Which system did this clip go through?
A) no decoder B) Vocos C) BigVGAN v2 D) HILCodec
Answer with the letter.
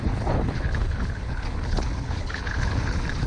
D